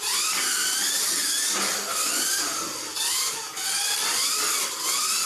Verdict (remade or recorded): recorded